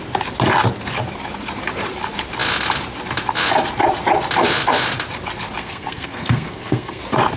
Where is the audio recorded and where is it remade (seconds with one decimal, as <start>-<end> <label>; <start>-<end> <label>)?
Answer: 0.0-5.6 recorded; 5.6-7.0 remade; 7.0-7.4 recorded